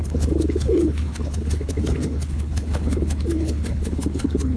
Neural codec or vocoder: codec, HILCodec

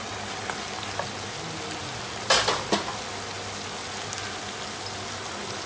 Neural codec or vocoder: none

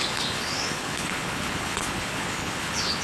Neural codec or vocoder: codec, HILCodec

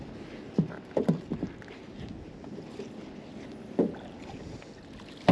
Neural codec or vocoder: none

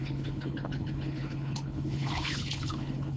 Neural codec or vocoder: codec, HILCodec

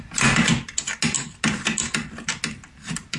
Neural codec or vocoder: none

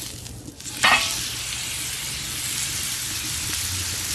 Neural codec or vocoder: none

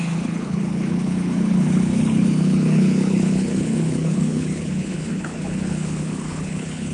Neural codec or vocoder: codec, HILCodec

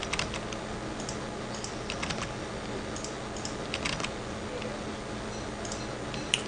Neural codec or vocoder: none